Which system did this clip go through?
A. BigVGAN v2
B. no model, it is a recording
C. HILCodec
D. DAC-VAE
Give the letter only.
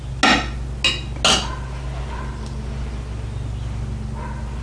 B